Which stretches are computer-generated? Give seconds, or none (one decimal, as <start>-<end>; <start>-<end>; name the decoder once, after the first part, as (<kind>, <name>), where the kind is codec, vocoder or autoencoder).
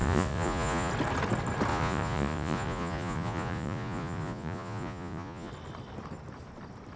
0.0-0.9 (vocoder, Vocos); 1.7-5.5